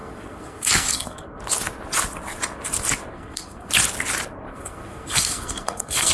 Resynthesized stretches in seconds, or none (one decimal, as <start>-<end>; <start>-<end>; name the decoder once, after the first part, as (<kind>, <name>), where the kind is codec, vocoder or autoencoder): 0.0-1.4 (codec, SNAC); 3.1-3.7; 4.5-6.1